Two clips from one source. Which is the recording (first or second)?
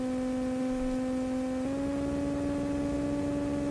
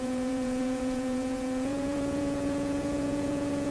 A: first